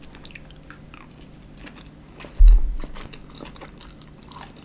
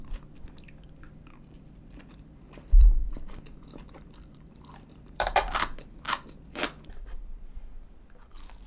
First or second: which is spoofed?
second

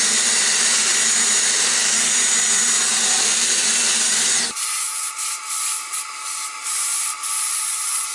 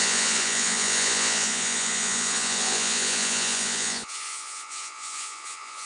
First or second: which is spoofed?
second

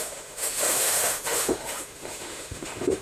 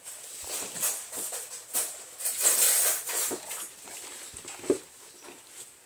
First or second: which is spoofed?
first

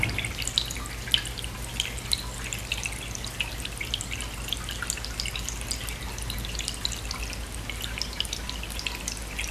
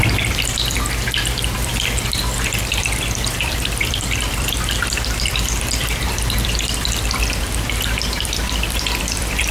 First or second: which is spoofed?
second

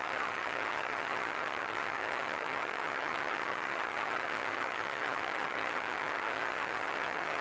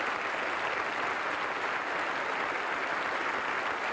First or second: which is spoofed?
first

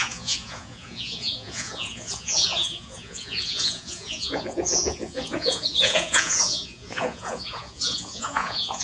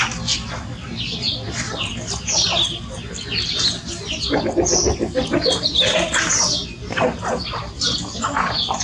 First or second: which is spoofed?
first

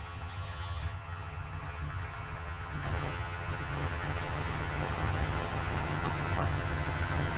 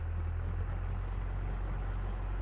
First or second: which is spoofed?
first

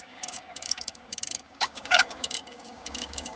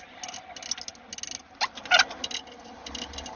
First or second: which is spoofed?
first